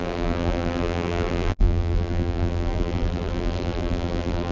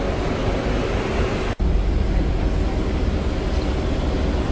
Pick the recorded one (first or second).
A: second